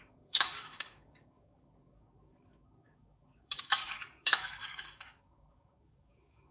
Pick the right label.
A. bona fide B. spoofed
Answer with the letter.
B